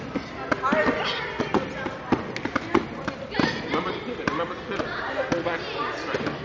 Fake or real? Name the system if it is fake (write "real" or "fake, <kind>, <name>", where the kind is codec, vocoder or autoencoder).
real